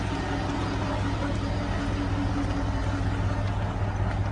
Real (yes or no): yes